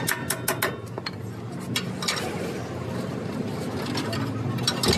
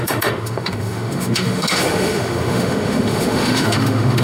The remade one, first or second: second